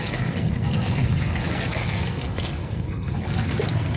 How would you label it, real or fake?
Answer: fake